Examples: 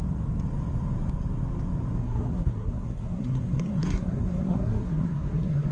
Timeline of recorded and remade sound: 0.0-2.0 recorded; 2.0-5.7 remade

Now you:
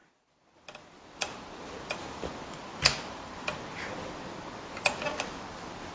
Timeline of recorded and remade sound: 0.0-5.9 recorded

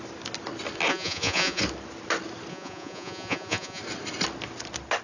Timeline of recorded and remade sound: 0.0-0.9 recorded; 0.9-1.6 remade; 1.6-2.5 recorded; 2.5-3.8 remade; 3.8-5.0 recorded

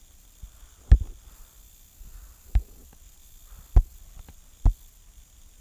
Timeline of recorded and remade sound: 0.0-5.6 recorded

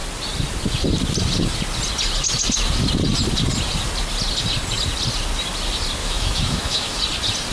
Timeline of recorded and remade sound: 0.0-6.0 recorded; 6.0-7.0 remade; 7.0-7.5 recorded

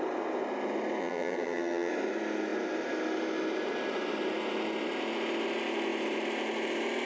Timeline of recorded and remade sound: 0.0-1.0 recorded; 1.0-1.9 remade; 1.9-7.1 recorded